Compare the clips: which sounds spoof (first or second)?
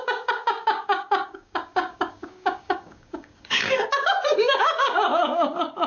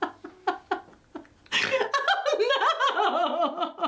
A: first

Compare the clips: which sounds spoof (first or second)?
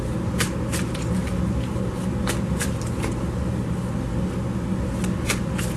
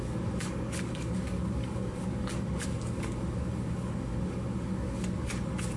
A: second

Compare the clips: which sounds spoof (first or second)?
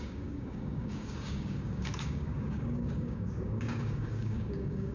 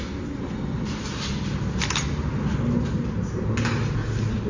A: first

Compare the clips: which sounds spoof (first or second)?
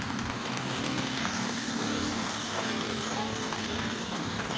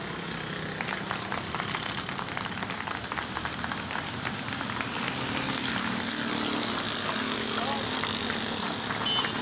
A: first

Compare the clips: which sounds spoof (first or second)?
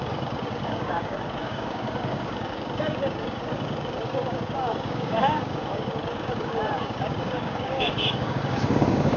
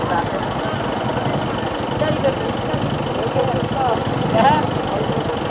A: first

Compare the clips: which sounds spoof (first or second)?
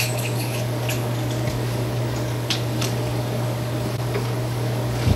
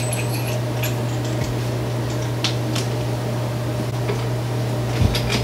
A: first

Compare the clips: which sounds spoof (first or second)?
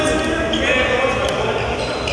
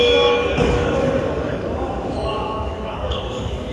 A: second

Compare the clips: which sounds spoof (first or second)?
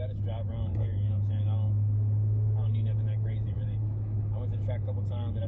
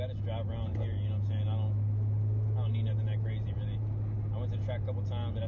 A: first